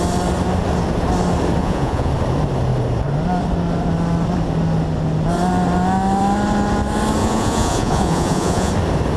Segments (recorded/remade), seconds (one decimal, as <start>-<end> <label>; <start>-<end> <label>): 0.0-1.6 recorded; 1.6-2.1 remade; 2.1-7.2 recorded; 7.2-8.7 remade; 8.7-9.2 recorded